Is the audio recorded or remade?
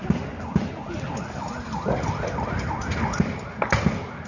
recorded